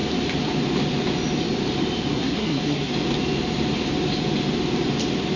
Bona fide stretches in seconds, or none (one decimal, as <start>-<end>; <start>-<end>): 0.0-2.1; 2.9-5.4